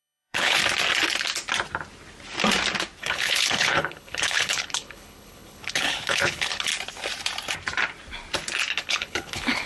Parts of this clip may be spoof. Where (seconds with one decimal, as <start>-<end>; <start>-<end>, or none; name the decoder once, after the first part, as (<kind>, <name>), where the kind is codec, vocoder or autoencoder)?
0.0-0.6 (codec, HILCodec); 3.0-6.7; 8.7-9.7